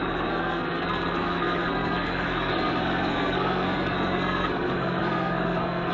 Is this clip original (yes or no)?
no